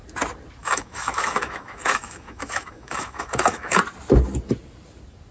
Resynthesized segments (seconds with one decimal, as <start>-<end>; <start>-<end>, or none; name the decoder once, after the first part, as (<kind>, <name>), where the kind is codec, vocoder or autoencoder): 0.6-3.8 (autoencoder, DAC-VAE)